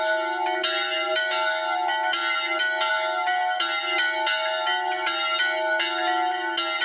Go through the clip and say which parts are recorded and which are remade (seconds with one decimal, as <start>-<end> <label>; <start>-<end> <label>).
0.0-6.8 recorded